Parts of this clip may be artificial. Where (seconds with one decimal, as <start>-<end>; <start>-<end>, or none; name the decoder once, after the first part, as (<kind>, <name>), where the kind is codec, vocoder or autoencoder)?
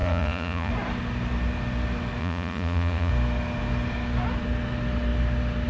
0.0-0.7 (vocoder, Vocos); 2.2-3.1